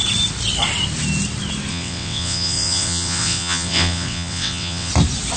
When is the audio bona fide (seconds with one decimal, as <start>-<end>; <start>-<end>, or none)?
0.0-1.7; 4.9-5.4